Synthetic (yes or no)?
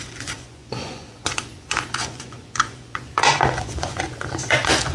yes